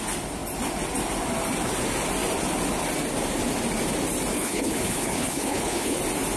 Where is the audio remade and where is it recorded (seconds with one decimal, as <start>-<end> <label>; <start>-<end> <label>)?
0.0-4.3 recorded; 4.3-6.0 remade; 6.0-6.4 recorded